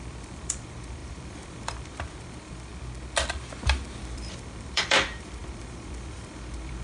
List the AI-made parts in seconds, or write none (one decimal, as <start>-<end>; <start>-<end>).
0.0-2.7; 4.0-6.8